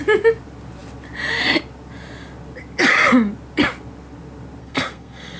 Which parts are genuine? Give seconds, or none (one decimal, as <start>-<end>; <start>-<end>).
0.0-4.6